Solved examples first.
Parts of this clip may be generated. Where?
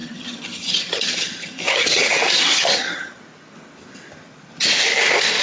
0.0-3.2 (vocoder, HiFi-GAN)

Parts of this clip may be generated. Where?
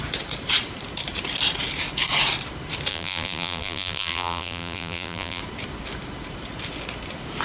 2.9-5.4 (vocoder, BigVGAN v2)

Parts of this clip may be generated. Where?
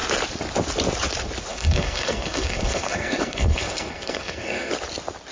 1.5-4.7 (codec, SNAC)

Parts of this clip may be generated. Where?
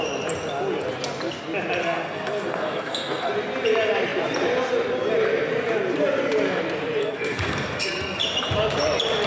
1.8-3.3 (codec, SNAC); 7.0-8.2